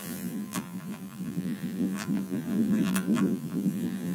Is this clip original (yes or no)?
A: no